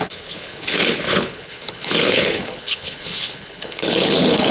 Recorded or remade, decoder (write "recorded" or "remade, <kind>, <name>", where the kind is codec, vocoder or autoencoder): remade, codec, HILCodec